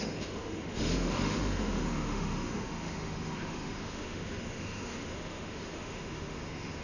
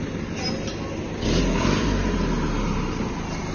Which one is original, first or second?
second